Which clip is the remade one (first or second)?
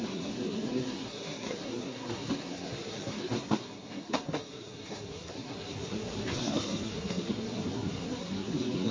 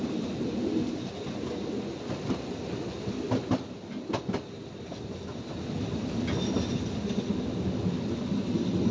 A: first